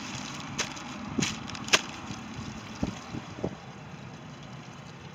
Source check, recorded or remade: remade